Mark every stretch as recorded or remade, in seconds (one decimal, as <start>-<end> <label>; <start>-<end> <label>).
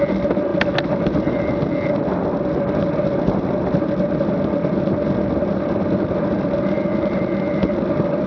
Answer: 0.0-8.3 recorded